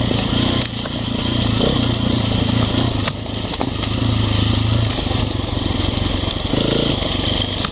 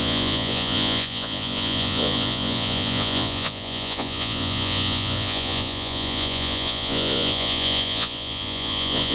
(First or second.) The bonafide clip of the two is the first